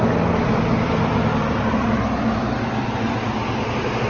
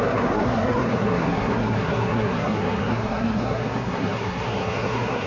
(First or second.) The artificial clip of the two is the second